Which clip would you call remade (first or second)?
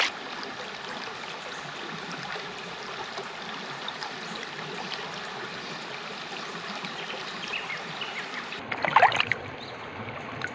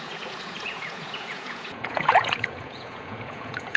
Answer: second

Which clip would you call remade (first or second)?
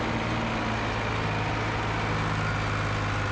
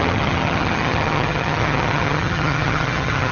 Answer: second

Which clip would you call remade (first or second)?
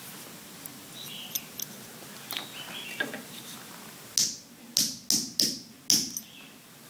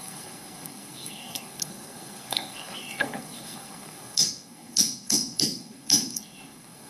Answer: second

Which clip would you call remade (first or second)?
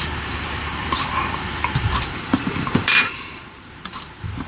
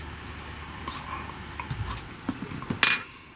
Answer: first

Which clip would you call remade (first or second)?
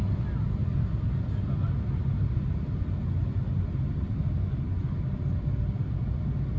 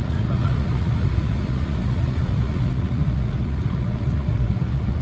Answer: second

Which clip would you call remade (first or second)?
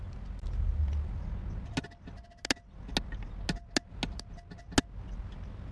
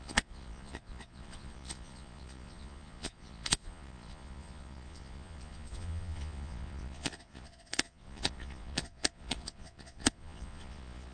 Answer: second